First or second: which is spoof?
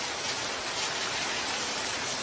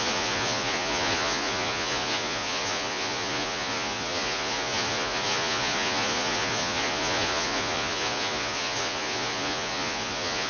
second